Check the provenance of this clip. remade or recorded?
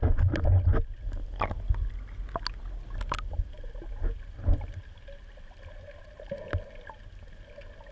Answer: recorded